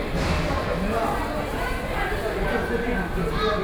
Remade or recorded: recorded